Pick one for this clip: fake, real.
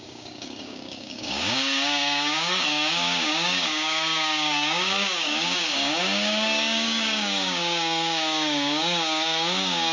fake